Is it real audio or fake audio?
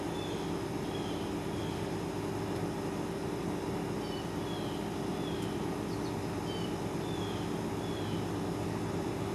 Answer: real